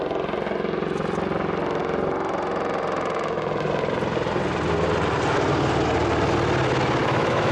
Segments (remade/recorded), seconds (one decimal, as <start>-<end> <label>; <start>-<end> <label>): 0.0-7.0 recorded; 7.0-7.5 remade